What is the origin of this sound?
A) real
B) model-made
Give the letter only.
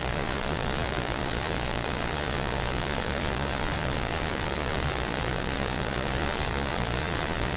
B